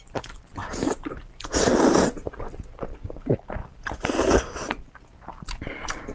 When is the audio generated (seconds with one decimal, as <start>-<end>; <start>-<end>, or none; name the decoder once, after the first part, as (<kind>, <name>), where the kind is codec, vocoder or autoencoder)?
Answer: 0.6-2.3 (vocoder, BigVGAN v2)